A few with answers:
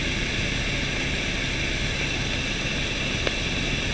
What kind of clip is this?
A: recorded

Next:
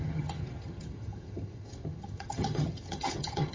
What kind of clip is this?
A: remade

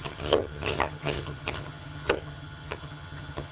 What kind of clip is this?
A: remade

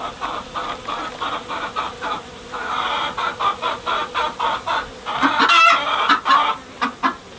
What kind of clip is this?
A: recorded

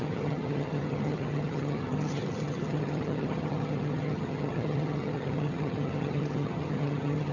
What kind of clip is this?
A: remade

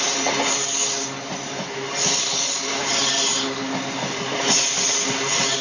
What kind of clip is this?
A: recorded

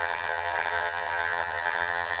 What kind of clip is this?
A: remade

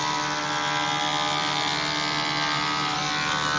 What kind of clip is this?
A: recorded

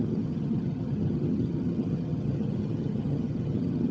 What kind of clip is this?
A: remade